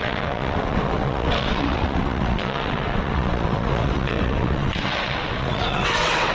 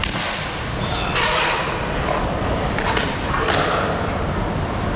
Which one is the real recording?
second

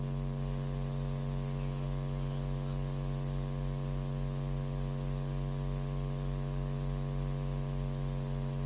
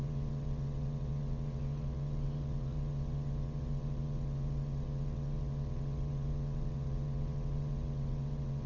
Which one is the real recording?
first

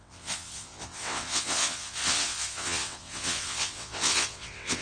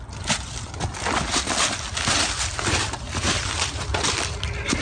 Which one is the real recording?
second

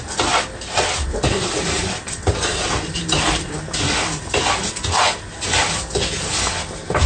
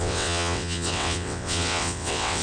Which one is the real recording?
first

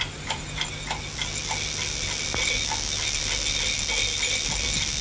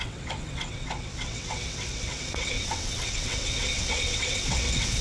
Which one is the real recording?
first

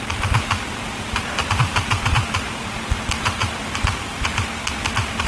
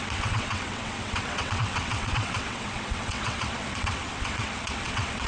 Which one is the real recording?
first